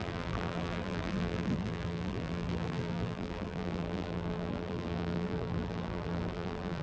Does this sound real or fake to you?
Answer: fake